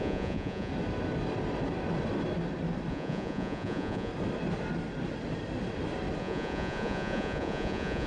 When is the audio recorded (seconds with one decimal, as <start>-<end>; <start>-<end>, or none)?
0.7-2.9; 4.1-6.2